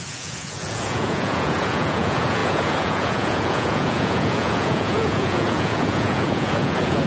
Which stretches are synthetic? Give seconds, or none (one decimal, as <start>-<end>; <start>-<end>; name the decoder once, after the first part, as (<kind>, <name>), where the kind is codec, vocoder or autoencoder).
0.0-7.1 (vocoder, Vocos)